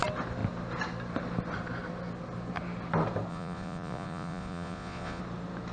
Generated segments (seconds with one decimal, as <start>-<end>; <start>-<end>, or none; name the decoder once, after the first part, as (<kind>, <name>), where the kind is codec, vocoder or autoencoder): 3.3-5.2 (vocoder, Vocos)